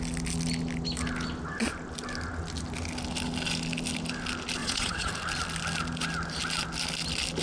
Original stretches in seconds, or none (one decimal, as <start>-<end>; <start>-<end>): 0.0-4.6; 5.1-7.4